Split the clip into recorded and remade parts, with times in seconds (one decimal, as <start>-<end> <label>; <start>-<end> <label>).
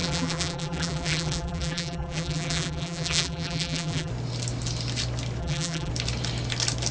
0.0-4.1 remade; 4.1-5.4 recorded; 5.4-5.9 remade; 5.9-6.9 recorded